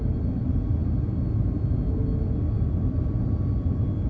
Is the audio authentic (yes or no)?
yes